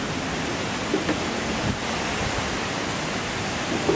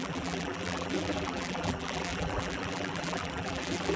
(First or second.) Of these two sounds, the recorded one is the first